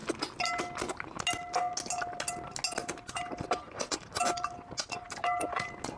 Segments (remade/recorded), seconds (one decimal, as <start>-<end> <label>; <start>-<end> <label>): 0.0-6.0 recorded